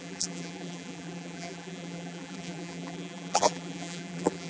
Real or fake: fake